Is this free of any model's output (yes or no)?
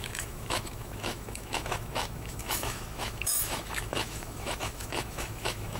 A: no